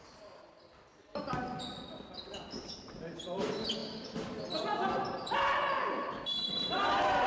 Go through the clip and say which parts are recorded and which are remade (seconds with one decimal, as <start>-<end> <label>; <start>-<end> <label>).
0.0-7.3 recorded